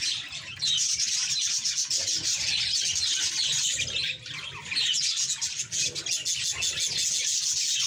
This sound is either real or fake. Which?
real